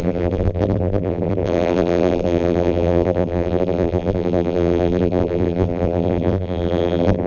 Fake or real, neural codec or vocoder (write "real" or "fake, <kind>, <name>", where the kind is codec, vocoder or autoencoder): fake, vocoder, BigVGAN v2